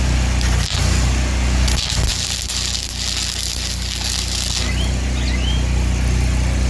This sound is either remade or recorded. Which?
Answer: recorded